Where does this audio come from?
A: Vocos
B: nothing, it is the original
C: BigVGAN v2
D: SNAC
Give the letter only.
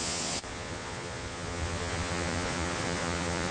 A